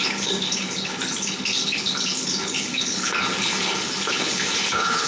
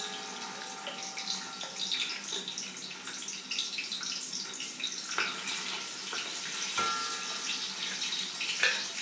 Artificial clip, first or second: first